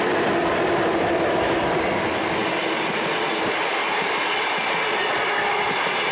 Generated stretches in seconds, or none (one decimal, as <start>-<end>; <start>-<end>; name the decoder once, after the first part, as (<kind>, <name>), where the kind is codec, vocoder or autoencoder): none